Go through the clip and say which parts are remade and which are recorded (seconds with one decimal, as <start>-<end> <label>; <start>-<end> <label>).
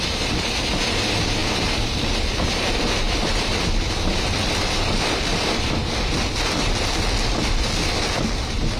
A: 0.0-8.8 remade